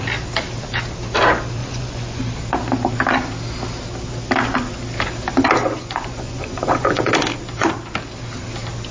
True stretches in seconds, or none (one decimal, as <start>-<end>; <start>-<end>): 0.0-1.6; 2.2-5.6; 7.1-8.9